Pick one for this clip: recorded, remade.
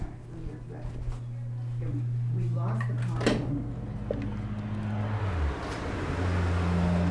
recorded